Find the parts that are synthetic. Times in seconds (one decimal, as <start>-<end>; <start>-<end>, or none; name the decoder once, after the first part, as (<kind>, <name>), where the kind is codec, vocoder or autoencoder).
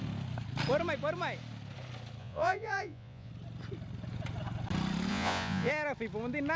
2.2-3.3 (vocoder, Vocos); 5.1-5.7